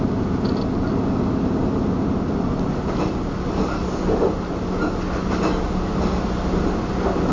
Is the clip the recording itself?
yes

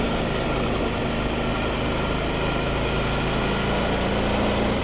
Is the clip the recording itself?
yes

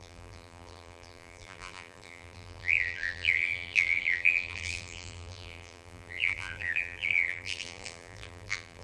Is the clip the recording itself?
no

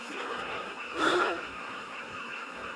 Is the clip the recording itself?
no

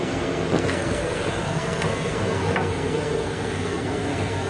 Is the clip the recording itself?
no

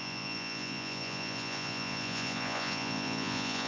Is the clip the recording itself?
no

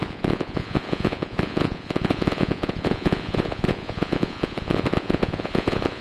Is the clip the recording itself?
no